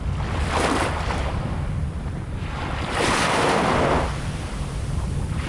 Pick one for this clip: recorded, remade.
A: recorded